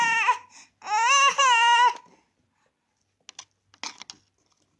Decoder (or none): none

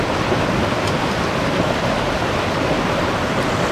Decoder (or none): none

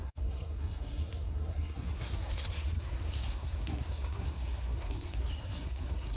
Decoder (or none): codec, SNAC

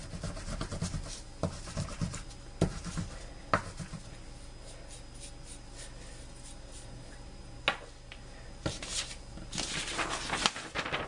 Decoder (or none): none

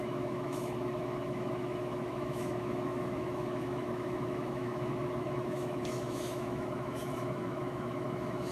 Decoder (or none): autoencoder, DAC-VAE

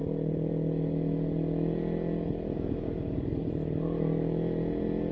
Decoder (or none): none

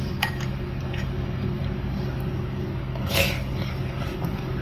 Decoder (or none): codec, DAC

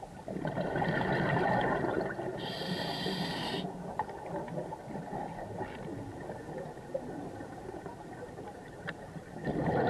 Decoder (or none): none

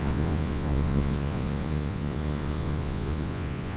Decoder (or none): vocoder, Vocos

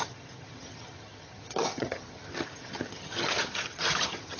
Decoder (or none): vocoder, HiFi-GAN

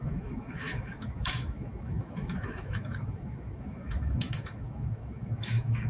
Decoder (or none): autoencoder, DAC-VAE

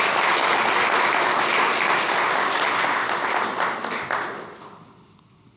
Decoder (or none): none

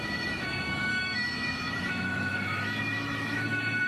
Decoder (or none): autoencoder, DAC-VAE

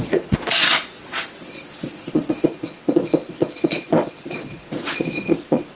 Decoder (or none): vocoder, Vocos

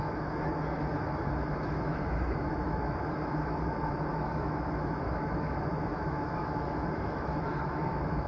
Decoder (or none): autoencoder, DAC-VAE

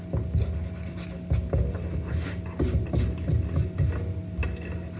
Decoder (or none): none